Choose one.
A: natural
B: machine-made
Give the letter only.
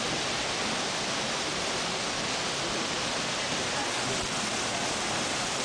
A